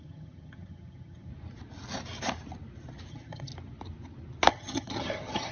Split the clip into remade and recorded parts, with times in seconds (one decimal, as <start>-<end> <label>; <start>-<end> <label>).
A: 0.0-1.3 remade; 1.3-3.1 recorded; 3.1-3.5 remade; 3.5-4.5 recorded; 4.5-5.5 remade